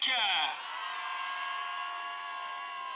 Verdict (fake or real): real